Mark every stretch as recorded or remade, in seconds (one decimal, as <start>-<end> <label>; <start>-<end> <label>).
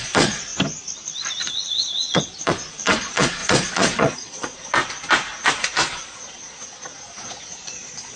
0.0-0.5 remade; 0.5-1.4 recorded; 1.4-4.8 remade; 4.8-5.6 recorded; 5.6-8.2 remade